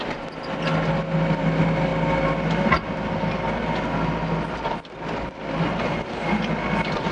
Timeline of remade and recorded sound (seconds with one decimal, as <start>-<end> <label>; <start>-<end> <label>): 0.0-7.1 recorded